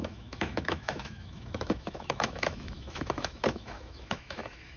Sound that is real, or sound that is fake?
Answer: fake